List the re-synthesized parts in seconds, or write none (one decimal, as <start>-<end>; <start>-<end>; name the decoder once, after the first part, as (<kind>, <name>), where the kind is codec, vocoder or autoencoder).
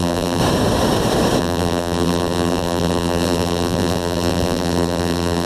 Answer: 0.0-0.4 (vocoder, BigVGAN v2); 1.4-5.5